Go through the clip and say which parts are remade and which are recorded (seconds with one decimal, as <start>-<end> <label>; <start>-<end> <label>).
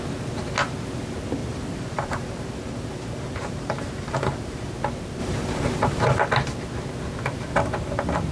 0.0-1.4 recorded; 1.4-4.7 remade; 4.7-5.2 recorded; 5.2-6.2 remade; 6.2-8.3 recorded